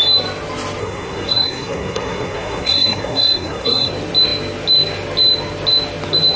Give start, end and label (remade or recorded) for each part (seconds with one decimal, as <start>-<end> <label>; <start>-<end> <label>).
0.0-0.8 recorded; 0.8-3.9 remade; 3.9-6.4 recorded